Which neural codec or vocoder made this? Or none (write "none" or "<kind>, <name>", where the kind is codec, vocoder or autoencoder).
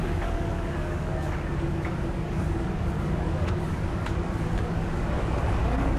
codec, DAC